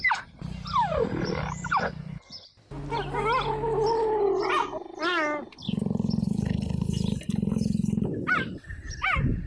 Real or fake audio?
real